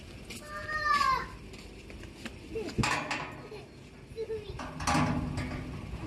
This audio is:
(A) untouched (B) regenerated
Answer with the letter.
A